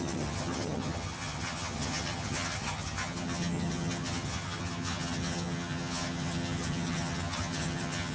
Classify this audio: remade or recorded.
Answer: remade